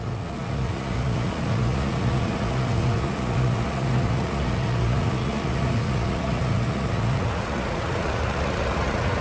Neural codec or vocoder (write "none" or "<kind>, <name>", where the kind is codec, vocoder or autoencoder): vocoder, Vocos